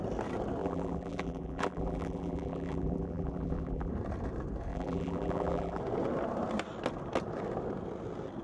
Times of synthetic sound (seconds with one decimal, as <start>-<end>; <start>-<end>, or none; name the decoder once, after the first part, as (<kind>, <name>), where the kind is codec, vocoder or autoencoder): 0.6-3.9 (vocoder, BigVGAN v2); 4.7-5.8